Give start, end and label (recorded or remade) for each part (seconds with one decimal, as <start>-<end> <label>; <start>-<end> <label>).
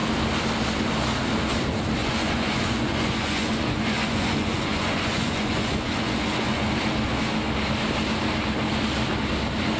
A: 0.0-2.0 recorded; 2.0-6.7 remade; 6.7-9.8 recorded